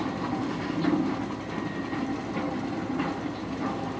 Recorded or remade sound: recorded